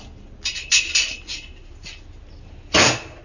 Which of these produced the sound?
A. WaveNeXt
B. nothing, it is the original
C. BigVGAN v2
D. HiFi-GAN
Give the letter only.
B